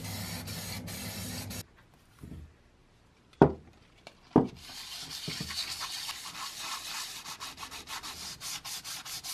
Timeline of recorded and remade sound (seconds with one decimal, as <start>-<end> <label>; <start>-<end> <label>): 0.0-2.8 recorded; 2.8-7.9 remade; 7.9-9.3 recorded

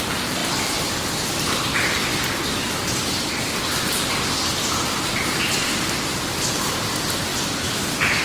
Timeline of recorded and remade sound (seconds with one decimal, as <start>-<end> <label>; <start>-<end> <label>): 0.0-2.1 remade; 2.1-5.0 recorded; 5.0-7.3 remade; 7.3-8.2 recorded

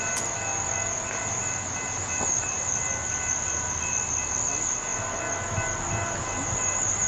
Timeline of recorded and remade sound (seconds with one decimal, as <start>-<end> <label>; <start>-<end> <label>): 0.0-7.1 recorded

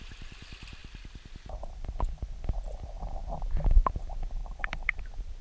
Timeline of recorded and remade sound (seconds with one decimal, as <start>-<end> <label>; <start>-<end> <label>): 0.0-4.4 recorded; 4.4-5.0 remade; 5.0-5.4 recorded

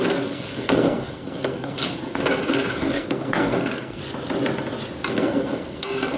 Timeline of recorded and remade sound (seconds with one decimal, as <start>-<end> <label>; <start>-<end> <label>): 0.0-4.0 remade; 4.0-5.1 recorded; 5.1-6.2 remade

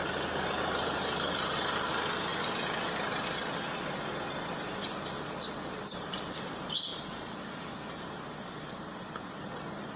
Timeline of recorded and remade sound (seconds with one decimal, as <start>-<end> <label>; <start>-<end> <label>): 0.0-10.0 recorded